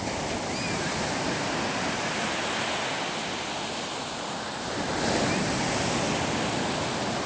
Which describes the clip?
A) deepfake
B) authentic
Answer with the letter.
B